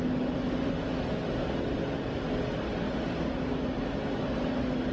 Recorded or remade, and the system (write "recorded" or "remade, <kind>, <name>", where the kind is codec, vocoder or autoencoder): recorded